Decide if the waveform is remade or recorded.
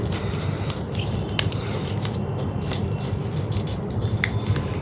remade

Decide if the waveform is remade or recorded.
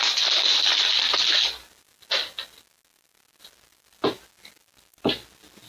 recorded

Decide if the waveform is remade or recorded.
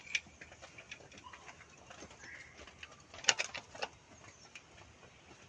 recorded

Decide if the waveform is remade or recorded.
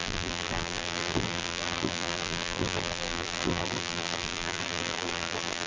remade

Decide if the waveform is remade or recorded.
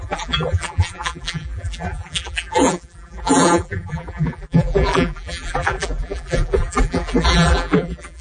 remade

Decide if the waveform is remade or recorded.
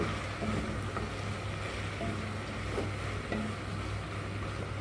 recorded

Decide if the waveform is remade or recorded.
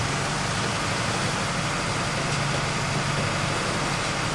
recorded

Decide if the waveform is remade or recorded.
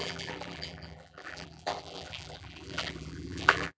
remade